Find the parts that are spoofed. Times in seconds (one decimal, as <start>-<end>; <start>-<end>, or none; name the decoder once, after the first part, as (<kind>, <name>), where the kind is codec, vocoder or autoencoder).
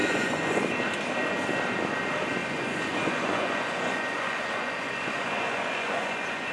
0.0-0.6 (vocoder, Vocos); 2.4-6.5